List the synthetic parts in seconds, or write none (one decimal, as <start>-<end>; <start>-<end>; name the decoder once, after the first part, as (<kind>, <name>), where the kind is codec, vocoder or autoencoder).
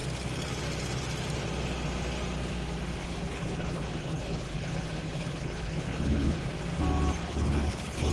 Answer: 3.0-6.5 (codec, HILCodec); 7.2-8.1